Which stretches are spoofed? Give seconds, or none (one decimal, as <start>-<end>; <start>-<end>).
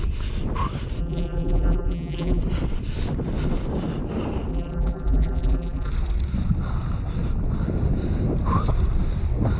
1.0-2.4; 4.5-5.9